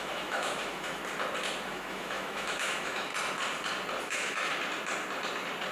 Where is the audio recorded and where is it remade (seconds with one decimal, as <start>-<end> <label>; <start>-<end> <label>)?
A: 0.0-1.0 remade; 1.0-1.7 recorded; 1.7-3.1 remade; 3.1-4.0 recorded; 4.0-4.5 remade; 4.5-5.7 recorded